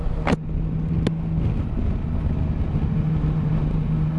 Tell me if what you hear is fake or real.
real